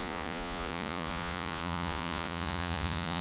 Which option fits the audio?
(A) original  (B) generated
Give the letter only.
B